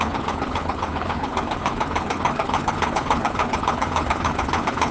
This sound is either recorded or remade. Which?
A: remade